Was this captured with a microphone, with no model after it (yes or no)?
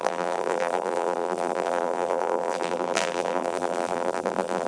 no